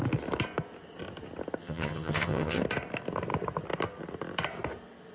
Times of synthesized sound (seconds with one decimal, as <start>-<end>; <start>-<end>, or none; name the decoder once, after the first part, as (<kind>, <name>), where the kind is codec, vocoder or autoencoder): 1.6-2.6 (vocoder, HiFi-GAN)